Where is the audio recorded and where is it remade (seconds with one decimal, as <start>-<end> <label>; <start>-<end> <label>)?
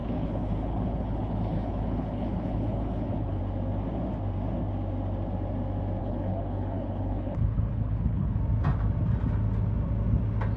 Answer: 0.0-3.4 remade; 3.4-6.0 recorded; 6.0-8.4 remade; 8.4-10.6 recorded